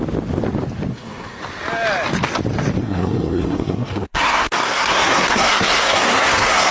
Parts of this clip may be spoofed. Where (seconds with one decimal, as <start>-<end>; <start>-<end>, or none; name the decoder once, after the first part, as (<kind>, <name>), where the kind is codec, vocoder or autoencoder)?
0.9-1.4 (codec, SNAC); 2.8-6.7